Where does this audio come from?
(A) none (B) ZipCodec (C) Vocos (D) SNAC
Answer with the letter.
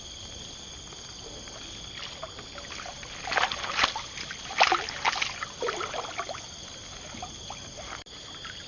A